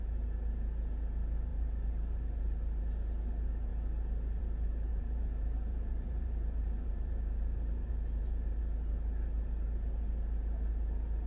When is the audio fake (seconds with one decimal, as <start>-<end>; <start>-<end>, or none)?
1.5-2.8; 4.9-8.6